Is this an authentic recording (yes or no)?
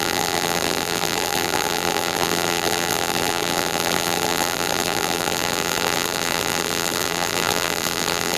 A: no